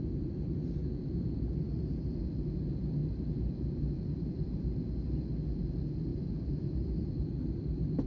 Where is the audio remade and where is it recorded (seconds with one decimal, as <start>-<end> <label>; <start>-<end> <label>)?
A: 0.0-0.8 recorded; 0.8-1.6 remade; 1.6-3.0 recorded; 3.0-5.2 remade; 5.2-6.1 recorded; 6.1-8.1 remade